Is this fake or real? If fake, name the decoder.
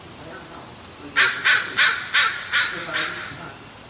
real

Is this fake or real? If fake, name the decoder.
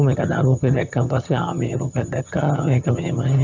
fake, vocoder, HiFi-GAN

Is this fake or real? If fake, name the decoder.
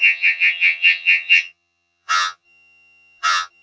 fake, vocoder, HiFi-GAN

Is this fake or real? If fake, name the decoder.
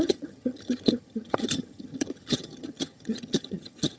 fake, vocoder, HiFi-GAN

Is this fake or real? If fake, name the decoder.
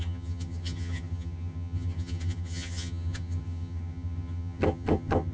fake, vocoder, HiFi-GAN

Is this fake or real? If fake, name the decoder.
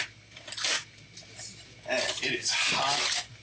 real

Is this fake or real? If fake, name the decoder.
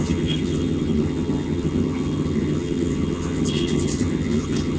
fake, vocoder, HiFi-GAN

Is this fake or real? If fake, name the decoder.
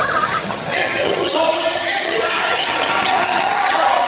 fake, vocoder, HiFi-GAN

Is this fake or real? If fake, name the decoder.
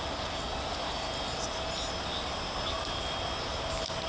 real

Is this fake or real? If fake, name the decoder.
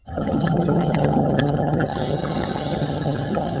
fake, vocoder, HiFi-GAN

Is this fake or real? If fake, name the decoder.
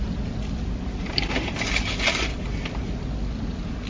real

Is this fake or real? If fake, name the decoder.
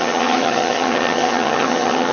fake, vocoder, HiFi-GAN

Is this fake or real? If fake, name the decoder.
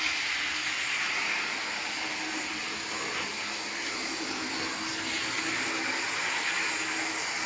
real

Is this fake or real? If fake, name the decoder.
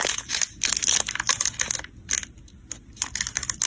real